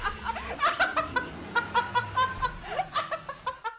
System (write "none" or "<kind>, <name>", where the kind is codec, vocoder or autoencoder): none